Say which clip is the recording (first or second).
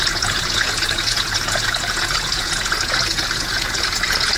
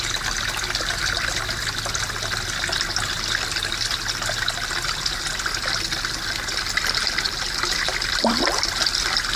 second